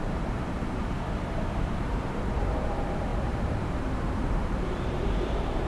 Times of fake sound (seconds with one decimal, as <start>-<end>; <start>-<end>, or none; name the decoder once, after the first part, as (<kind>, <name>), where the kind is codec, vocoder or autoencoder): 0.0-5.7 (vocoder, BigVGAN v2)